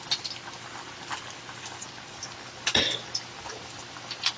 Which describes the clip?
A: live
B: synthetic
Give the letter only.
A